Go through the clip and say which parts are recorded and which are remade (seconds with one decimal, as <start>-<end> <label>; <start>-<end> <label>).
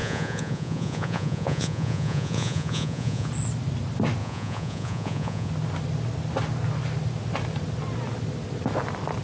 0.0-3.3 remade; 3.3-4.2 recorded; 4.2-5.5 remade; 5.5-9.2 recorded